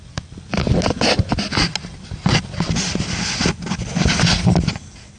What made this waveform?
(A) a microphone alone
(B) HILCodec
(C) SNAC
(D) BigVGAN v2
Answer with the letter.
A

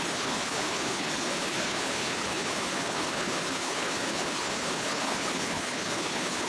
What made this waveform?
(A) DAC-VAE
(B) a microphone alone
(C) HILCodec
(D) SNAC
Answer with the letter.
C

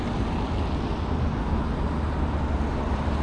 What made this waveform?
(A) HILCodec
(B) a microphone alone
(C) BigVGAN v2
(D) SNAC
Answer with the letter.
B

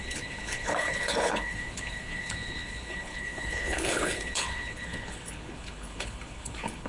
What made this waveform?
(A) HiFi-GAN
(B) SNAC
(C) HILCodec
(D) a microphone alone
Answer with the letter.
C